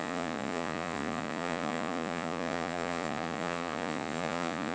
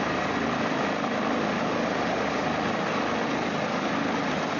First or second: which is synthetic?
first